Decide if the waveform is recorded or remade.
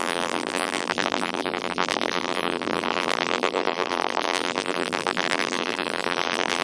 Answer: remade